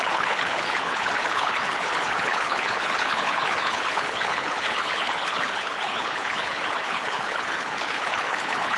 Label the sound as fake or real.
fake